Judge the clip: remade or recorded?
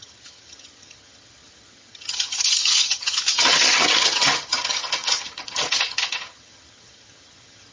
remade